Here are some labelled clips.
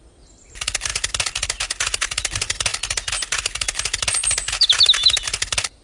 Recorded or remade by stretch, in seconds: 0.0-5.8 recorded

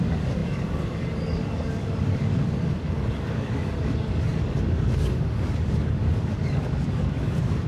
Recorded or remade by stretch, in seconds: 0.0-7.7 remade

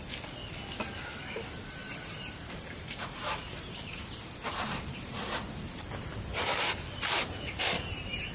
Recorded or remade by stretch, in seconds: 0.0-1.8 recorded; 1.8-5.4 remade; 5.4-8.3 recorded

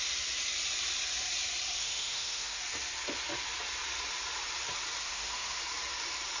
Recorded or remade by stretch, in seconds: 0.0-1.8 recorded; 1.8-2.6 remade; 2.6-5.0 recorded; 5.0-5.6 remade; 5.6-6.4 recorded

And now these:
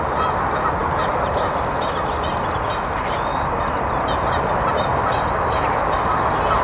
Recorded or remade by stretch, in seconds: 0.0-6.6 recorded

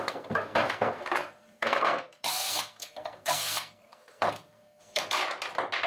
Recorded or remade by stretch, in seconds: 0.0-5.2 remade; 5.2-5.9 recorded

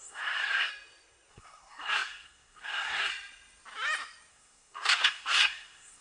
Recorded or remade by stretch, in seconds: 0.0-0.7 remade; 0.7-1.3 recorded; 1.3-3.1 remade; 3.1-4.3 recorded; 4.3-6.0 remade

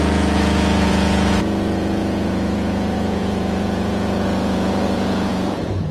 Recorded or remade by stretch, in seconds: 0.0-5.9 remade